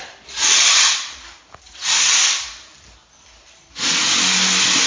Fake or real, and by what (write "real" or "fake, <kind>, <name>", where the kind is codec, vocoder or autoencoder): real